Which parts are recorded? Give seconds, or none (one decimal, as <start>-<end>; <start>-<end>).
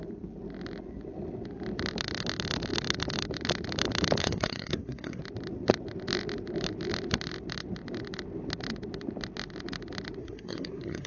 0.0-4.2; 5.2-10.2